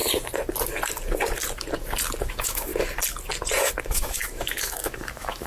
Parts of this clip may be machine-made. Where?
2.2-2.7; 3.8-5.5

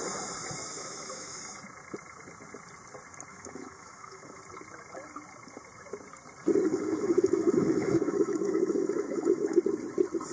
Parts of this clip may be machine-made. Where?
0.7-1.4; 3.3-4.4; 6.7-9.6

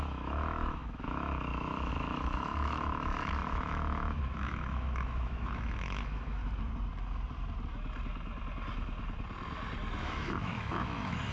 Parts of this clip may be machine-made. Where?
0.0-6.4; 10.0-11.3

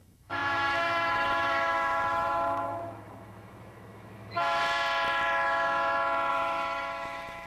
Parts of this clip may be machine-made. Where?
0.0-4.6; 6.3-7.5

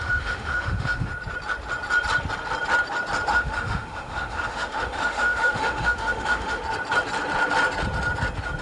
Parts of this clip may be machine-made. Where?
0.0-1.1; 3.3-6.6